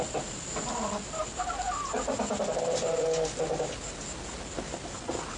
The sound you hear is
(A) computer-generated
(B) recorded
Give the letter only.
B